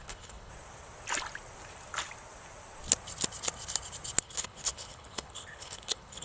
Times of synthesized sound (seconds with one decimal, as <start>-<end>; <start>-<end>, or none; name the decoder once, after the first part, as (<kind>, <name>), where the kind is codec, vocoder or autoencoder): 0.0-0.5 (codec, HILCodec); 4.2-6.2